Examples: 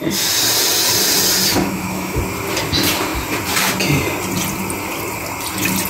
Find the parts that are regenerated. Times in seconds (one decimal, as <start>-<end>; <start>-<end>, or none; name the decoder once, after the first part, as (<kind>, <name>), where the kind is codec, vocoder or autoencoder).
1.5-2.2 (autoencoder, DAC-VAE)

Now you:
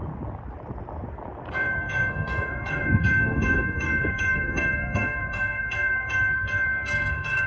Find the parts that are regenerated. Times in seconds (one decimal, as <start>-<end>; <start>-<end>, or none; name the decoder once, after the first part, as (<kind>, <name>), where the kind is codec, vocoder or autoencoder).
1.5-7.5 (codec, SNAC)

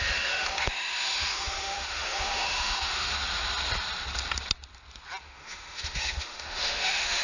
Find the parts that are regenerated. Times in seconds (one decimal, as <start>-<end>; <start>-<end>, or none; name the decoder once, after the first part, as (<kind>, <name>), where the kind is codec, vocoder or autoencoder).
0.0-3.1 (autoencoder, DAC-VAE); 5.2-7.2

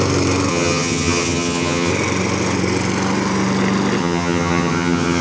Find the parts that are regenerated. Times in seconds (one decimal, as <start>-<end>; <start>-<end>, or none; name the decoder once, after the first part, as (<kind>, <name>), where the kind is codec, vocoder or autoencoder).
0.5-1.9 (vocoder, HiFi-GAN); 4.0-5.2

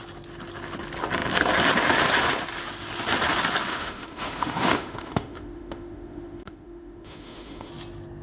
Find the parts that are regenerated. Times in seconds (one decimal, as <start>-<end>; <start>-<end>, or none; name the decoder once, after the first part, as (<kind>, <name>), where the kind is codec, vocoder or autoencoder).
3.7-7.7 (autoencoder, DAC-VAE)

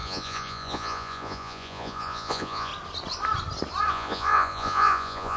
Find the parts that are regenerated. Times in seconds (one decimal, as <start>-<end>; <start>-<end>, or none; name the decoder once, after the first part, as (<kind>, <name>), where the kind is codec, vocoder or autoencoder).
0.0-2.7 (vocoder, Vocos); 3.9-5.4